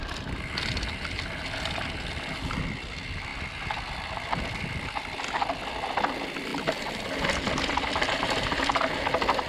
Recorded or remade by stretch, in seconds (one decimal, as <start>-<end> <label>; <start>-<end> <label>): 0.0-9.5 recorded